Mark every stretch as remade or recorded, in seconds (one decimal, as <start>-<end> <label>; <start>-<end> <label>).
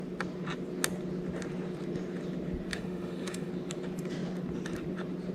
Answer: 0.0-2.7 recorded; 2.7-3.5 remade; 3.5-5.3 recorded